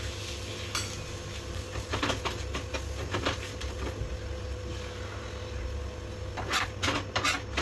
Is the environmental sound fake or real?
real